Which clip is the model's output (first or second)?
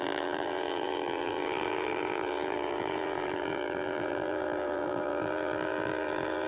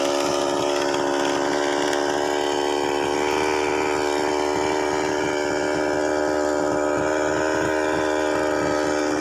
first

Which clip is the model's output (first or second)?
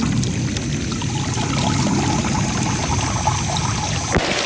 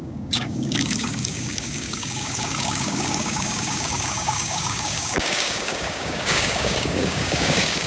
second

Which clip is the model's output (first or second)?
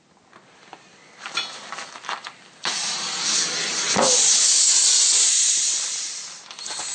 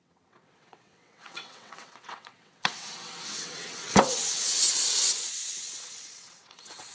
second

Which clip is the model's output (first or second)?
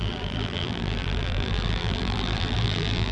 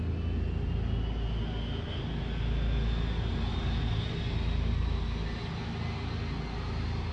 first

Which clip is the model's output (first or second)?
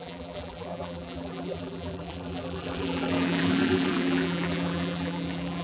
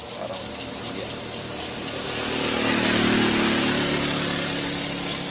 first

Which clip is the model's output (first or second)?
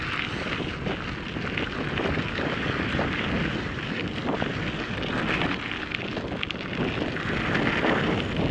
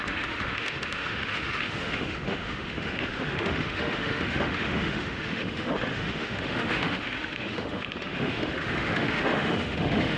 second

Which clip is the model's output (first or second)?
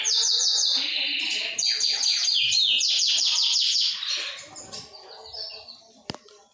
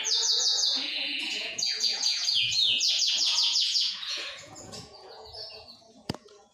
second